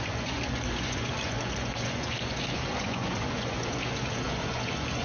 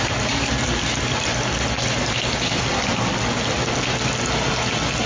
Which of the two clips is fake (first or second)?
first